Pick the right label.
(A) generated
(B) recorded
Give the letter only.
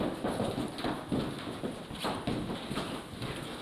B